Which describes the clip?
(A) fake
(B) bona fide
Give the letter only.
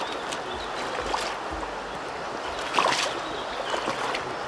B